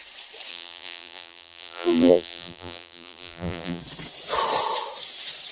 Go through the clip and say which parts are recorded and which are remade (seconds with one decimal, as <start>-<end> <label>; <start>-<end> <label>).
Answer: 0.0-0.5 recorded; 0.5-3.8 remade; 3.8-5.5 recorded